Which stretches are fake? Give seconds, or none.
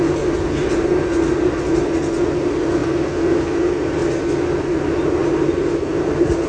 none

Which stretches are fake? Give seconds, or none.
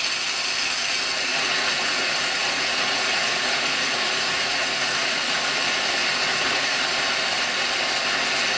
1.3-5.4 (vocoder, Vocos); 6.3-6.8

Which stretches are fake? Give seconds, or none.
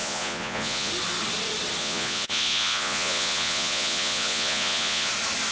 0.0-0.9 (vocoder, Vocos); 1.8-5.1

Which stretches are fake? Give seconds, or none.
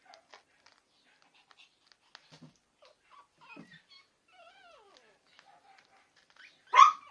none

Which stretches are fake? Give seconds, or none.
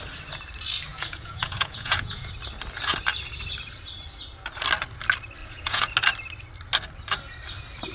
0.9-2.3 (vocoder, Vocos); 5.4-5.9